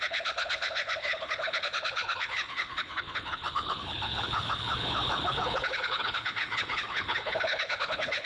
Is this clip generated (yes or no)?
yes